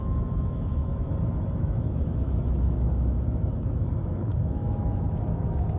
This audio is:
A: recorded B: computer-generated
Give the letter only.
B